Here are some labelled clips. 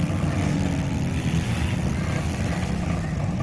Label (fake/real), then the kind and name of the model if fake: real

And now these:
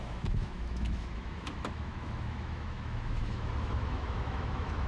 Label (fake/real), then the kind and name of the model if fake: fake, autoencoder, DAC-VAE